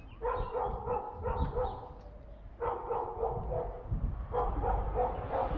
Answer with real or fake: real